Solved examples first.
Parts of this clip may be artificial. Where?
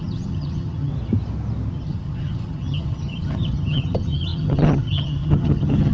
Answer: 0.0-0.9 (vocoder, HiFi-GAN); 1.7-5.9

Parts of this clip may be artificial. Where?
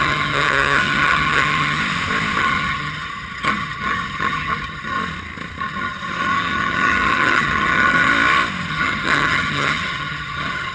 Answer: 0.0-1.8 (vocoder, HiFi-GAN); 2.4-5.0; 5.6-8.1; 8.7-10.7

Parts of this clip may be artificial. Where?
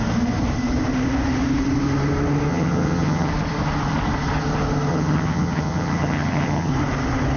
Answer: 2.5-3.3 (vocoder, HiFi-GAN); 4.9-6.7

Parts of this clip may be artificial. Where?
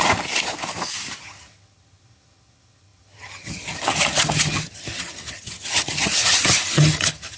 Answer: 1.2-7.4 (vocoder, HiFi-GAN)